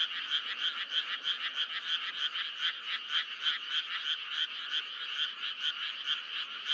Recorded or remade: recorded